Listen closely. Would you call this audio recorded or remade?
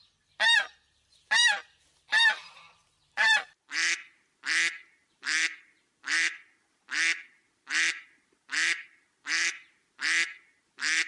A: remade